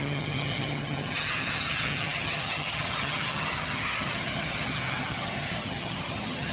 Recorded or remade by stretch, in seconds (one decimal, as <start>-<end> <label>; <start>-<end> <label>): 0.0-6.5 remade